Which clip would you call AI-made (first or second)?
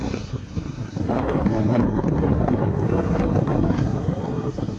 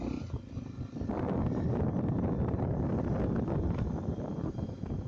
first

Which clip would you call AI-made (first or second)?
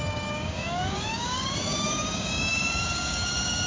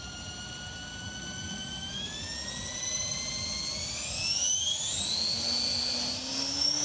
first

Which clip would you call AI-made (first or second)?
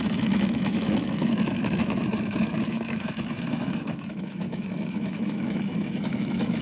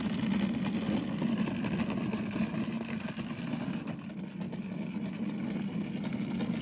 first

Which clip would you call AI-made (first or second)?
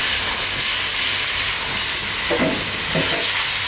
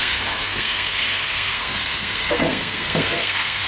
second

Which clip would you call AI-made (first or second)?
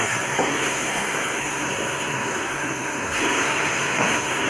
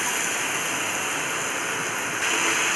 first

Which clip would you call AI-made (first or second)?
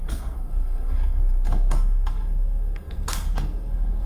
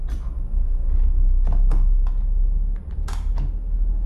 first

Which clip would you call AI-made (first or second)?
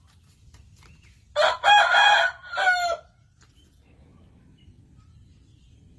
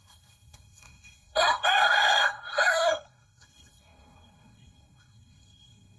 second